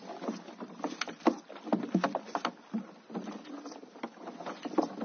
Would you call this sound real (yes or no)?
yes